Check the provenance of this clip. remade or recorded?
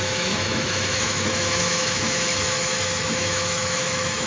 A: remade